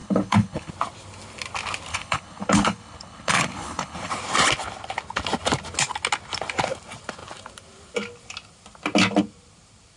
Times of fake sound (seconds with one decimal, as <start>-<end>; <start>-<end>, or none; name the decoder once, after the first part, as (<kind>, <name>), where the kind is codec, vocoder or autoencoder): 0.0-0.7 (codec, HILCodec); 1.9-4.1